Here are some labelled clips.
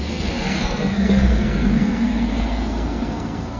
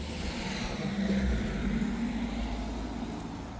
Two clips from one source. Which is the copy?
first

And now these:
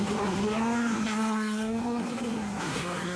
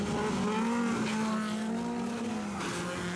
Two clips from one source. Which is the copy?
first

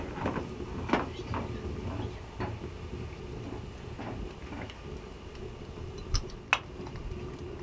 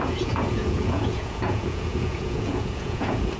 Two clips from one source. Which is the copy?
second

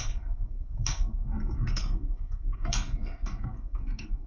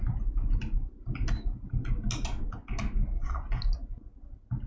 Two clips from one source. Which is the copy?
first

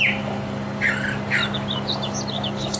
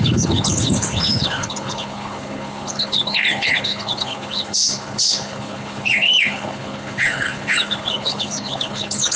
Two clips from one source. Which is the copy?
second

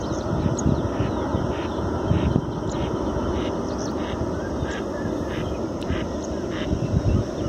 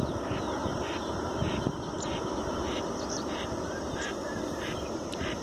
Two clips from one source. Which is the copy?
second